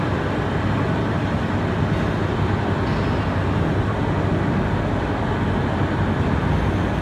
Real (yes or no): yes